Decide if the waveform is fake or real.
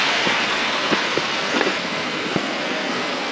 fake